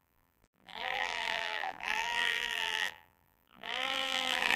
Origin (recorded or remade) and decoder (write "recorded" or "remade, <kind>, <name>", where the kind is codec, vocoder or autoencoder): remade, vocoder, BigVGAN v2